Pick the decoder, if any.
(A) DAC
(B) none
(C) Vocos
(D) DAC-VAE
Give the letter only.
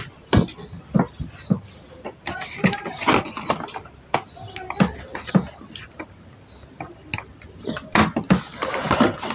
B